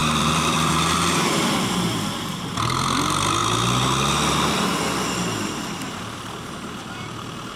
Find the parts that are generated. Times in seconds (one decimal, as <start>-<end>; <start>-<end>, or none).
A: 0.0-3.4; 4.3-4.7; 5.4-7.6